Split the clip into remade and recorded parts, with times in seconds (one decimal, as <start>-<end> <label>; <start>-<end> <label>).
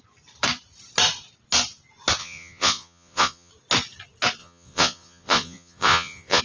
0.0-2.2 recorded; 2.2-3.5 remade; 3.5-4.4 recorded; 4.4-6.4 remade